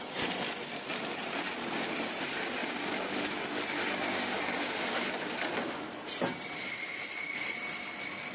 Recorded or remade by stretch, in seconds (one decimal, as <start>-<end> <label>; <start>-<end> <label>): 0.0-8.3 recorded